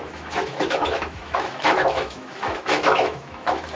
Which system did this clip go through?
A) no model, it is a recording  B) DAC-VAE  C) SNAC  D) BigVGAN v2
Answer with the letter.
B